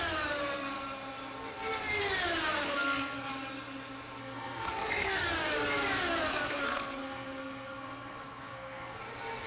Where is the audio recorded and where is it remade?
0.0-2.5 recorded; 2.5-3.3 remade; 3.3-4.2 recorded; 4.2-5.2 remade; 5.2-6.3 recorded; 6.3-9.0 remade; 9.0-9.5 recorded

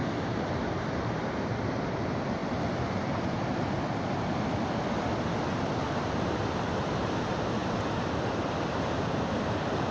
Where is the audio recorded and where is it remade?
0.0-2.4 remade; 2.4-6.7 recorded; 6.7-9.9 remade

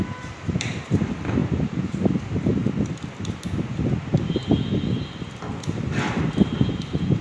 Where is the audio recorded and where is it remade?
0.0-2.6 remade; 2.6-7.2 recorded

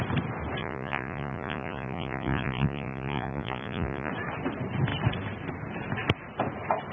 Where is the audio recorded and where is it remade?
0.0-0.6 recorded; 0.6-4.1 remade; 4.1-6.9 recorded